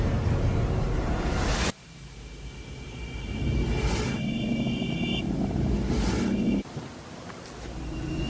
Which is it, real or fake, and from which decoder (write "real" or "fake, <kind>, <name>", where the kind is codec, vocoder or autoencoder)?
real